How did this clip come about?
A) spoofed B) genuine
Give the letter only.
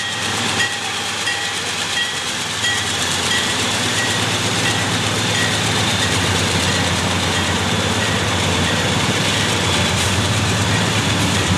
A